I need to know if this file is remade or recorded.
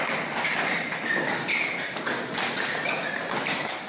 recorded